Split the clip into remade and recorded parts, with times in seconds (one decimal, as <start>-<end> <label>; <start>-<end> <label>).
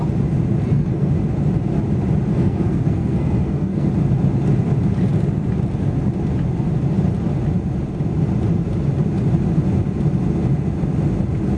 0.0-0.6 recorded; 0.6-1.1 remade; 1.1-2.3 recorded; 2.3-3.9 remade; 3.9-11.6 recorded